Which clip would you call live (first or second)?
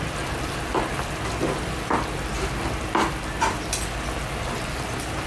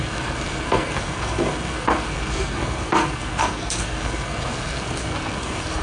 first